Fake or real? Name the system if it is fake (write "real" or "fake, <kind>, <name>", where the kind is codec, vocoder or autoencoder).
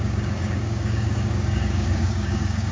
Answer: fake, codec, DAC